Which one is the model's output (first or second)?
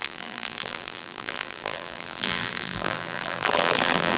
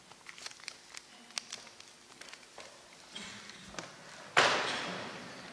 first